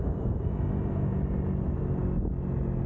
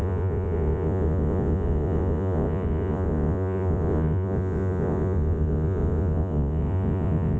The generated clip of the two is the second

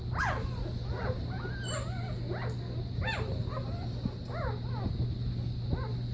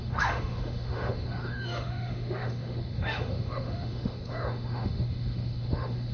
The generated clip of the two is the second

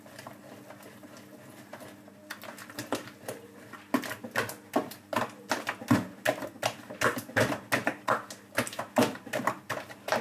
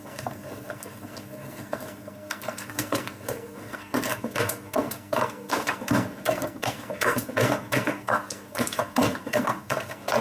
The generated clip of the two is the second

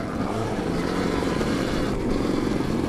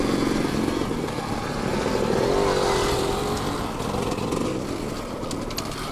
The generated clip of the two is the first